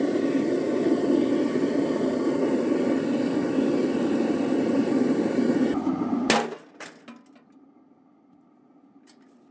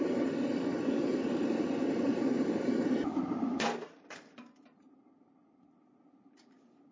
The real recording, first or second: first